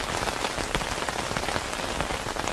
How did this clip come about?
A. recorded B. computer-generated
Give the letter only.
A